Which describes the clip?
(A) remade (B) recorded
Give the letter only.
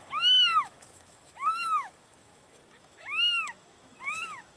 A